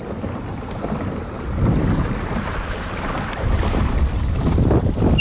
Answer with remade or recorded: recorded